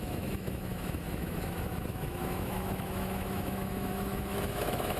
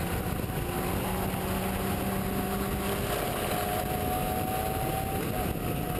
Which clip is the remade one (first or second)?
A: first